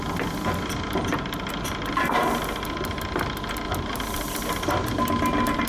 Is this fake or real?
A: real